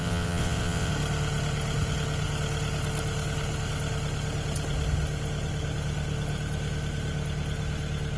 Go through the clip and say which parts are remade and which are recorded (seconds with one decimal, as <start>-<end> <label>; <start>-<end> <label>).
0.0-0.9 remade; 0.9-8.2 recorded